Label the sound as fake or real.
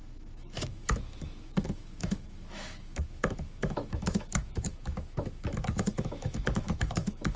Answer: fake